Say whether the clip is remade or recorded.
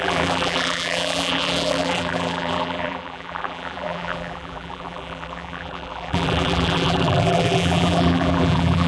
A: remade